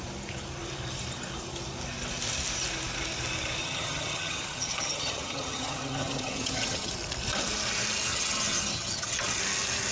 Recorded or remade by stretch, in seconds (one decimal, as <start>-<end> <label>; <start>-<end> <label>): 0.0-3.6 recorded; 3.6-6.9 remade; 6.9-8.1 recorded; 8.1-9.4 remade; 9.4-9.9 recorded